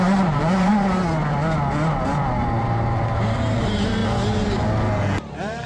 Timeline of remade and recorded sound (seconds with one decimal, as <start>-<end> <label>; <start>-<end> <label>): 0.0-0.7 remade; 0.7-2.6 recorded; 2.6-4.0 remade; 4.0-5.3 recorded; 5.3-5.7 remade